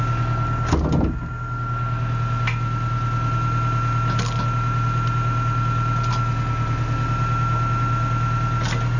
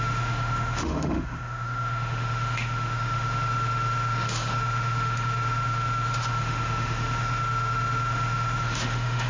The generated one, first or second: second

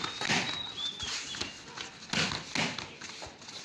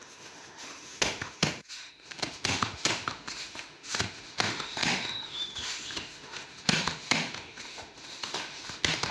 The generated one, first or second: second